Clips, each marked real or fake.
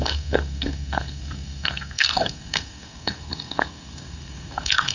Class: fake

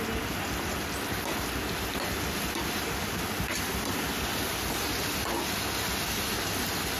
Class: real